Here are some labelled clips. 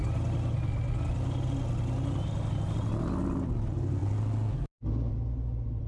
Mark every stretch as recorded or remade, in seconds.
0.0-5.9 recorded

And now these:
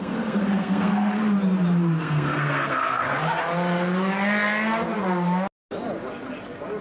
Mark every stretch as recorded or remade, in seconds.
0.0-1.2 remade; 1.2-2.0 recorded; 2.0-3.0 remade; 3.0-6.8 recorded

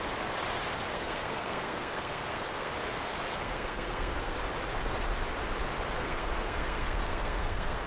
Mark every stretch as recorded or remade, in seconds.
0.0-0.9 recorded; 0.9-2.7 remade; 2.7-3.3 recorded; 3.3-4.4 remade; 4.4-6.0 recorded; 6.0-7.9 remade

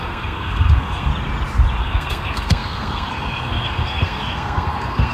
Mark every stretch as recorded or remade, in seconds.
0.0-1.1 remade; 1.1-1.8 recorded; 1.8-5.1 remade

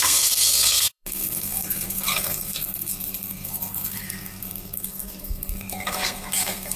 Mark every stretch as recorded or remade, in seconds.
0.0-6.8 remade

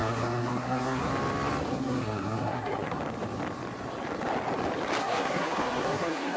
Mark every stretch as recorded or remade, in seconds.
0.0-1.1 remade; 1.1-1.7 recorded; 1.7-3.0 remade; 3.0-5.0 recorded; 5.0-6.4 remade

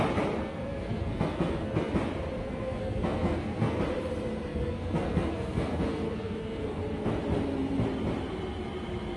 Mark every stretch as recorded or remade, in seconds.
0.0-0.4 recorded; 0.4-2.0 remade; 2.0-2.4 recorded; 2.4-3.8 remade; 3.8-4.5 recorded; 4.5-6.8 remade; 6.8-9.2 recorded